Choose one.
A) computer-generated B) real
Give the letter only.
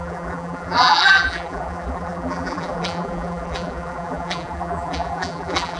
A